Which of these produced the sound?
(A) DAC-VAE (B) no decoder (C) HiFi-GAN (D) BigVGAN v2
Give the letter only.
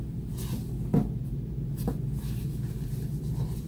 B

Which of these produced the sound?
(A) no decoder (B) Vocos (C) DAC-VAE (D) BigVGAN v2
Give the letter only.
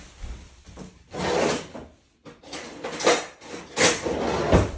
A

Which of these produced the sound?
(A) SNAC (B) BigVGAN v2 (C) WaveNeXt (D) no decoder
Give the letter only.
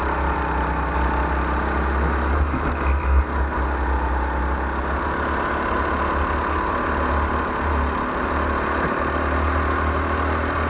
D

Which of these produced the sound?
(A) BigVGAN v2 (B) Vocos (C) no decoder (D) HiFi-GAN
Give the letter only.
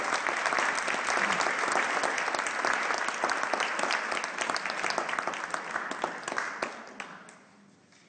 C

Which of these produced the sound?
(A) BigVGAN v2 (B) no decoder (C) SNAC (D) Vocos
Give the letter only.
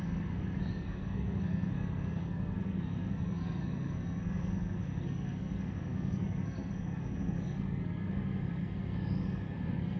C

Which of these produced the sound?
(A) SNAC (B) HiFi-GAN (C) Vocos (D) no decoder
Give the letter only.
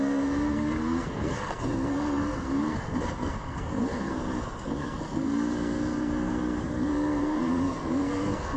A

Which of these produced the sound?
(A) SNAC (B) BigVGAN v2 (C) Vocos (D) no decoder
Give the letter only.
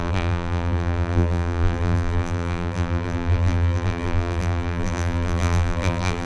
B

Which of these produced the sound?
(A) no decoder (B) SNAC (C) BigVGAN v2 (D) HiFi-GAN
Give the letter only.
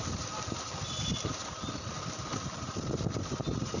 A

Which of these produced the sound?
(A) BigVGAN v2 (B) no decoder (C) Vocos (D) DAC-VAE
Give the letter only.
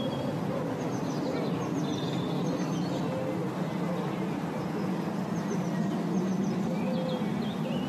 B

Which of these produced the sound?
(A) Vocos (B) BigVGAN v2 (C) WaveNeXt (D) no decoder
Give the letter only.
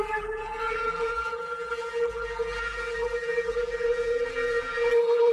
B